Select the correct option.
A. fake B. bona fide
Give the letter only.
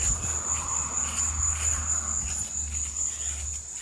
B